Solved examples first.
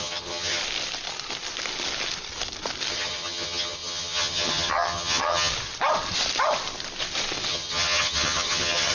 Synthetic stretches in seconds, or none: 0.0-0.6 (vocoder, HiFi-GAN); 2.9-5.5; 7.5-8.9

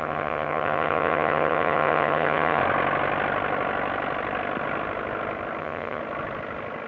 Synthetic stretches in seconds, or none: 0.0-2.6 (vocoder, HiFi-GAN); 5.6-6.0

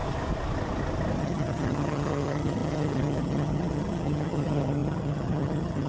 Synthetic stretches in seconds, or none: 1.2-5.9 (vocoder, HiFi-GAN)

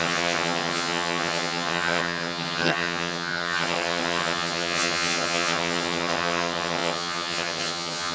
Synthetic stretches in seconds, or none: 0.0-8.1 (vocoder, HiFi-GAN)

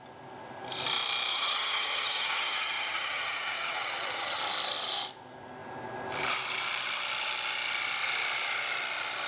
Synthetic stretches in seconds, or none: 1.3-4.4 (vocoder, HiFi-GAN)

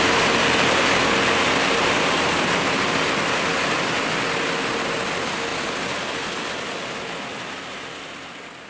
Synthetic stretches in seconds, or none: none